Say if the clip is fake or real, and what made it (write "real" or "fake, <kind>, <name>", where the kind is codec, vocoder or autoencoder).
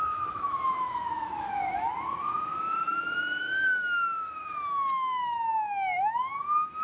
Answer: fake, autoencoder, DAC-VAE